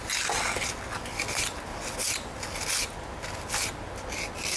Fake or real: real